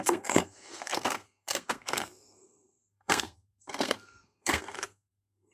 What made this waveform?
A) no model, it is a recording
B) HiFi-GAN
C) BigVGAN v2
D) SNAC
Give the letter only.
D